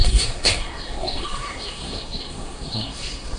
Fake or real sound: fake